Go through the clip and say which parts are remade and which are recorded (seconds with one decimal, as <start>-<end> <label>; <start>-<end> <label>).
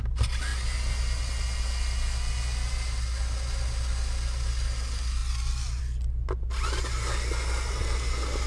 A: 0.0-8.5 recorded